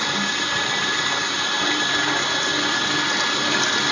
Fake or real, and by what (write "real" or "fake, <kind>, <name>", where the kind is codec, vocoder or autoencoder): real